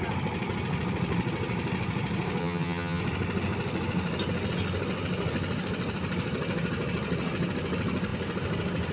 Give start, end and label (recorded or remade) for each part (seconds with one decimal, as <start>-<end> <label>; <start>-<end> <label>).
0.0-2.4 recorded; 2.4-3.0 remade; 3.0-8.9 recorded